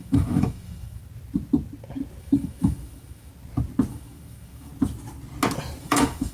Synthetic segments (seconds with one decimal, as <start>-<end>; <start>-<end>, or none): 0.0-1.0; 2.2-3.3; 3.9-4.7; 5.8-6.3